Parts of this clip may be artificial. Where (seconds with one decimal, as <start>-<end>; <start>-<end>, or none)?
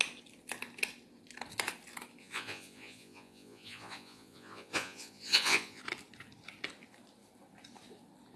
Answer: 2.2-5.8